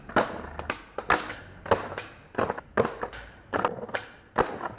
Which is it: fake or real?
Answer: real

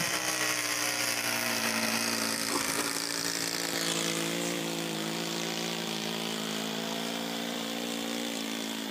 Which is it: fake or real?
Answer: fake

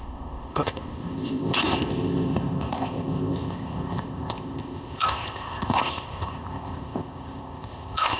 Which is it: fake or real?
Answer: fake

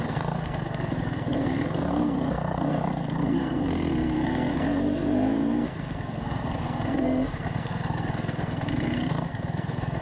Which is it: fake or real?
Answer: fake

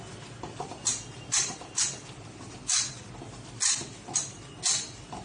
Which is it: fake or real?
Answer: real